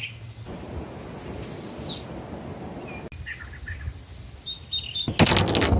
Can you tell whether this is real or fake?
real